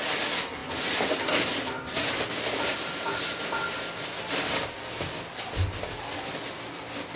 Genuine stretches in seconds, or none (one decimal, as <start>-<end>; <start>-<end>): 0.0-7.2